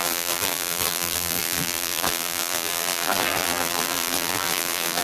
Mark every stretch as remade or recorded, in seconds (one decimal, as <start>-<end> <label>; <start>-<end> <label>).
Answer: 0.0-5.0 remade